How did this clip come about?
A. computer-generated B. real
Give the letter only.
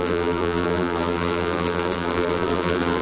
A